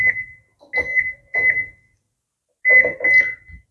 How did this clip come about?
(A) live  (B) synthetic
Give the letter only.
A